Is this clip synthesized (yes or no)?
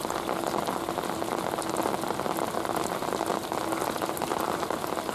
no